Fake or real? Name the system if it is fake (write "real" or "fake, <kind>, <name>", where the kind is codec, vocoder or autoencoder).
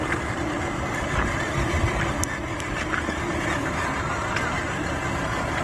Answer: real